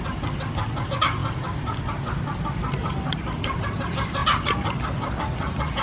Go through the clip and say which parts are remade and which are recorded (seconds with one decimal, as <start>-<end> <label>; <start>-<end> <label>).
0.0-5.8 recorded